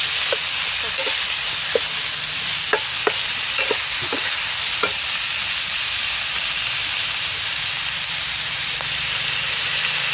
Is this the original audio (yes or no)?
yes